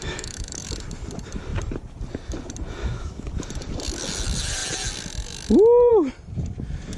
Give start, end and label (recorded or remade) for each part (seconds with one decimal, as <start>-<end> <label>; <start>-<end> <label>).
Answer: 0.0-0.6 remade; 0.6-2.8 recorded; 2.8-3.3 remade; 3.3-7.0 recorded